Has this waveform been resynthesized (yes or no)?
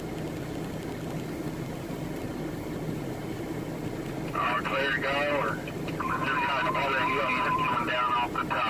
no